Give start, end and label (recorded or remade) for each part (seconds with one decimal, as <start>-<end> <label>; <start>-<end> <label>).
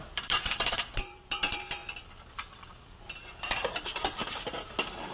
0.0-1.8 remade; 1.8-5.1 recorded